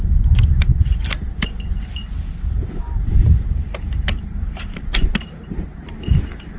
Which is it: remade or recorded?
remade